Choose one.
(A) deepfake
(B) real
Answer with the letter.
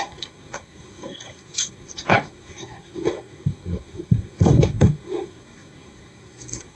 A